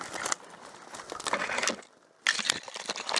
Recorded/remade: recorded